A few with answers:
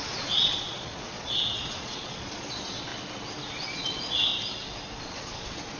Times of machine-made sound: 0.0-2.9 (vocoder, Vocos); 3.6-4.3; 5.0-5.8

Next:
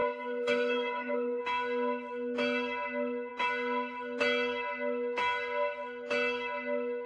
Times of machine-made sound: 0.0-1.4 (codec, SNAC)

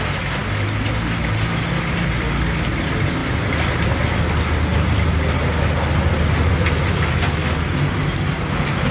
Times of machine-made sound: none

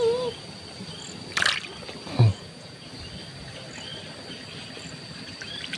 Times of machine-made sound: 2.3-2.9 (vocoder, Vocos)

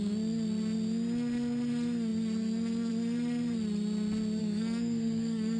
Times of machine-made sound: 4.4-5.6 (codec, DAC)